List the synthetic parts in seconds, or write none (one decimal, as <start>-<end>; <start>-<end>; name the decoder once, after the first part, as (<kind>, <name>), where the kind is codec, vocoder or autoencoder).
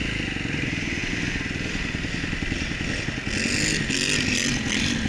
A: none